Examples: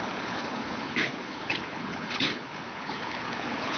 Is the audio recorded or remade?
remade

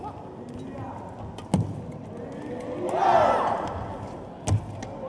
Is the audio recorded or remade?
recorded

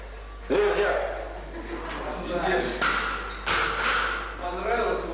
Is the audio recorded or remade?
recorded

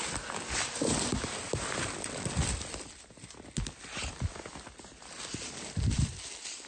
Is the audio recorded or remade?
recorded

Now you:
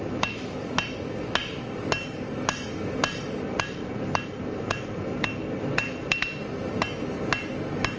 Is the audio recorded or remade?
recorded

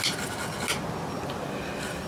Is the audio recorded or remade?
recorded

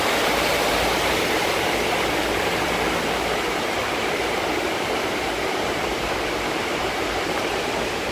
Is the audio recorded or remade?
remade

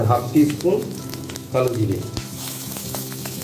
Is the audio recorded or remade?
remade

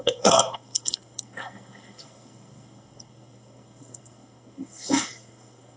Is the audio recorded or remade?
remade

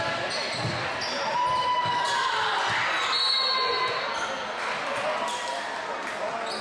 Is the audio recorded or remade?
recorded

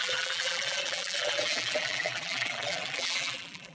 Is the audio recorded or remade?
remade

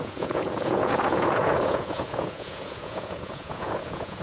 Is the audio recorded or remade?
remade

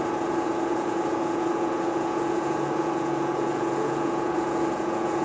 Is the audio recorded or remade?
remade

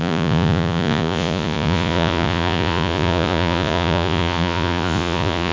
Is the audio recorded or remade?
remade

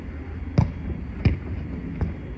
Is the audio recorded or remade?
recorded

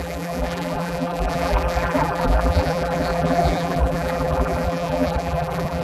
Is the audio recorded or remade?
remade